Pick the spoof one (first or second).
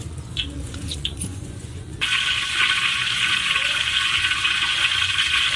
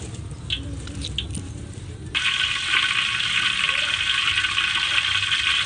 first